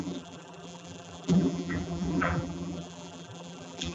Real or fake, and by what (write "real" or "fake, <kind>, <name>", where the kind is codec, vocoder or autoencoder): fake, vocoder, BigVGAN v2